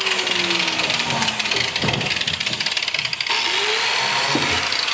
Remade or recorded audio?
recorded